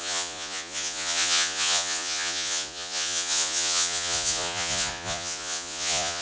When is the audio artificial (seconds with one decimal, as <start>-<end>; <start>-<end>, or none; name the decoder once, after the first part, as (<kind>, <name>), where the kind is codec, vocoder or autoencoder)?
0.0-6.2 (vocoder, Vocos)